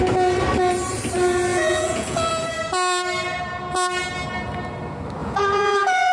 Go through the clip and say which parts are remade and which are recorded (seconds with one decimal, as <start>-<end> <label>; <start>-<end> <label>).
0.0-1.5 recorded; 1.5-2.3 remade; 2.3-5.2 recorded; 5.2-6.1 remade